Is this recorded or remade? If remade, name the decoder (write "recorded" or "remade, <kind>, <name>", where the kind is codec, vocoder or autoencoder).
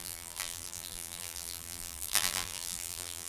remade, vocoder, BigVGAN v2